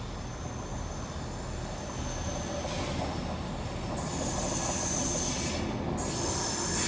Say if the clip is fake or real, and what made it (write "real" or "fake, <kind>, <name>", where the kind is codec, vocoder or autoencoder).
real